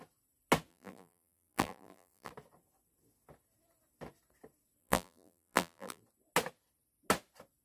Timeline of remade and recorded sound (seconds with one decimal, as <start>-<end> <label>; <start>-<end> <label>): 0.0-0.7 recorded; 0.7-2.3 remade; 2.3-4.8 recorded; 4.8-6.0 remade; 6.0-7.6 recorded